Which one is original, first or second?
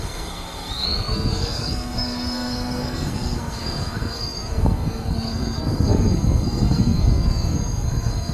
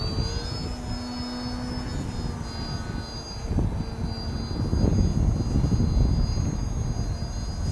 second